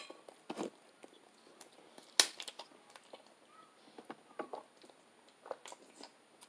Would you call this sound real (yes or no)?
yes